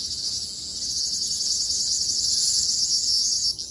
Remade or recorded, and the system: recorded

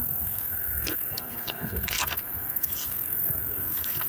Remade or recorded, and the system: remade, codec, SNAC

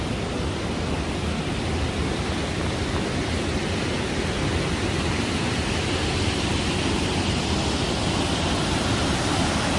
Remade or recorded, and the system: recorded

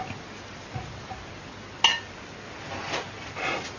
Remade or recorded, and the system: recorded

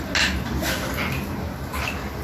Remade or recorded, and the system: recorded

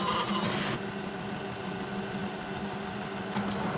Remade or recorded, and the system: recorded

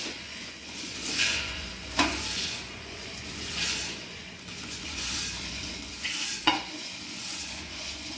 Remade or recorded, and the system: remade, vocoder, Vocos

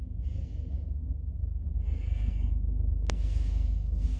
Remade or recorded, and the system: remade, codec, SNAC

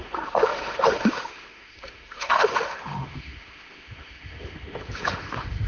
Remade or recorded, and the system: remade, autoencoder, DAC-VAE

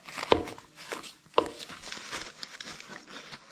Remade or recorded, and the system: remade, codec, DAC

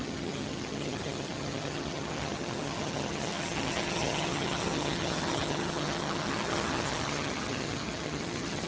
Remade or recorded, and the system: remade, vocoder, HiFi-GAN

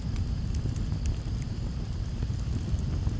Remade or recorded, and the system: recorded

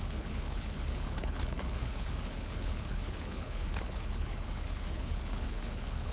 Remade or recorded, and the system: remade, codec, HILCodec